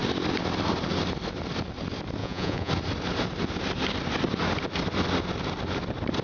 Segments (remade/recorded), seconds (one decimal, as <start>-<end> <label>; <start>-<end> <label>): 0.0-2.2 recorded; 2.2-2.7 remade; 2.7-6.2 recorded